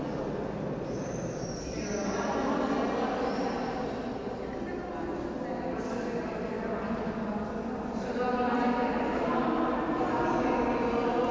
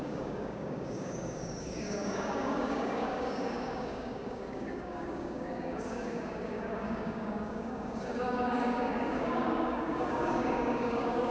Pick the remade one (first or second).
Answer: second